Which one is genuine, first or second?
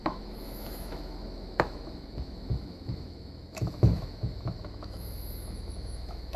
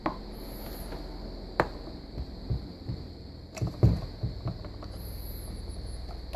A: second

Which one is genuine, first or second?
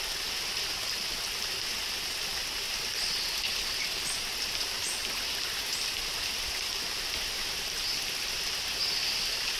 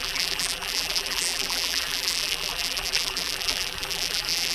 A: first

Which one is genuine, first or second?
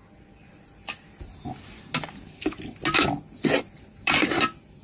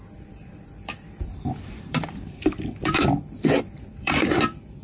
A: first